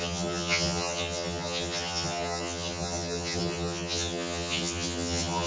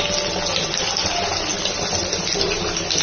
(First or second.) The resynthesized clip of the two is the first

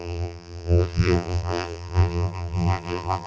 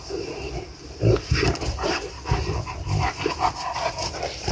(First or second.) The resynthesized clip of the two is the first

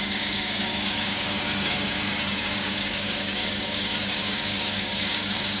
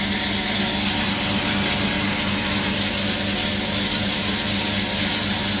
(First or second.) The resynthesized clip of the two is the first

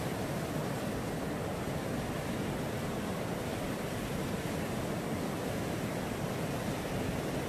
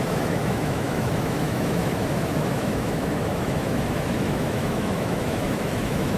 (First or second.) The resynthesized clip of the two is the second